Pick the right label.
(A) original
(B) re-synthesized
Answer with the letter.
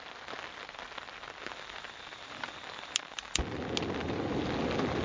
A